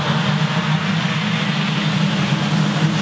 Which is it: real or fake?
real